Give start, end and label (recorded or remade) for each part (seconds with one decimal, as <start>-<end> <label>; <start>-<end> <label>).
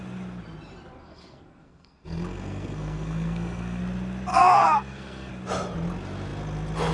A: 0.0-1.0 recorded; 1.0-3.8 remade; 3.8-4.3 recorded; 4.3-5.3 remade; 5.3-6.9 recorded